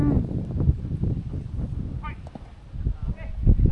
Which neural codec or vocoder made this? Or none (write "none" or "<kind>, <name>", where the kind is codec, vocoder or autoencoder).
none